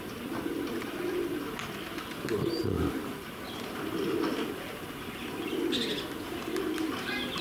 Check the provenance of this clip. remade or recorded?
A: recorded